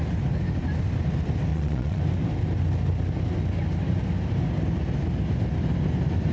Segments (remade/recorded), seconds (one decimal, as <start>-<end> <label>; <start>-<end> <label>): 0.0-1.5 recorded; 1.5-2.0 remade; 2.0-6.3 recorded

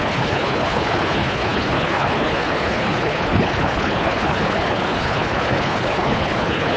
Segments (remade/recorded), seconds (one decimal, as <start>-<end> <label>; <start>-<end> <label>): 0.0-6.8 remade

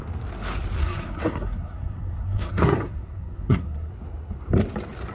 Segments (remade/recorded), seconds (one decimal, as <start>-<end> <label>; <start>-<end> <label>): 0.0-0.8 recorded; 0.8-3.9 remade; 3.9-5.1 recorded

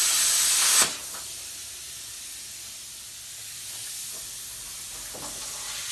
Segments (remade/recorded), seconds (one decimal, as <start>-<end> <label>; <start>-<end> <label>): 0.0-5.9 recorded

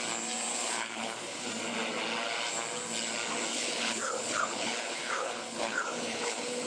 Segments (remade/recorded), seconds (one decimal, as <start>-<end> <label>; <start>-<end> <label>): 0.0-0.5 recorded; 0.5-1.5 remade; 1.5-3.5 recorded; 3.5-6.7 remade

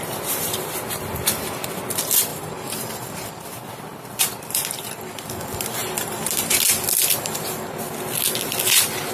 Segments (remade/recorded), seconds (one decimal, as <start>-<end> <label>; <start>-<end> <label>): 0.0-2.3 recorded; 2.3-3.3 remade; 3.3-3.9 recorded; 3.9-4.9 remade; 4.9-5.8 recorded; 5.8-6.6 remade; 6.6-9.1 recorded